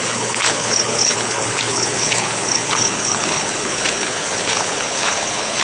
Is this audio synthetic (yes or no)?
yes